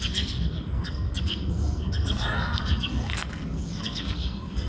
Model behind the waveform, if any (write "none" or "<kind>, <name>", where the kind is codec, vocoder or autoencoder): codec, SNAC